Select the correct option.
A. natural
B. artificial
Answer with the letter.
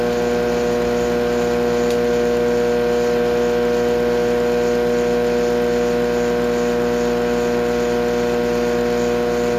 A